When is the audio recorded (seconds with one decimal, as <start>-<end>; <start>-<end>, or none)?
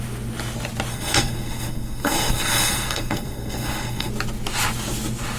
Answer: 0.0-0.9; 4.1-5.4